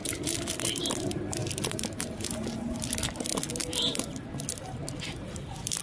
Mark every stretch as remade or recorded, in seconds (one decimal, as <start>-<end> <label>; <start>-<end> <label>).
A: 0.0-0.9 remade; 0.9-1.4 recorded; 1.4-3.0 remade; 3.0-3.6 recorded; 3.6-5.8 remade